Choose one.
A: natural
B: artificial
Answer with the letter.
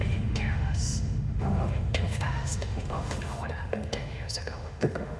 B